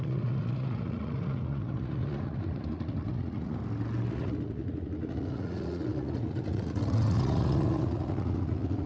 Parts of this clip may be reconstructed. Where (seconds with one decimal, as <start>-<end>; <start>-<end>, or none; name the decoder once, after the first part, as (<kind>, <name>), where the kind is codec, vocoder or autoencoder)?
0.0-3.6 (vocoder, Vocos); 4.1-8.9